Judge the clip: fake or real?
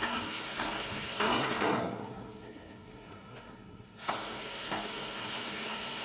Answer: fake